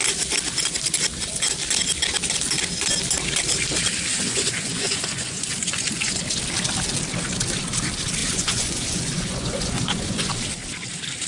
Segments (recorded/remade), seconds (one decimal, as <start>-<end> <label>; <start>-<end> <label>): 0.0-4.1 recorded; 4.1-6.2 remade; 6.2-8.2 recorded; 8.2-10.3 remade; 10.3-11.3 recorded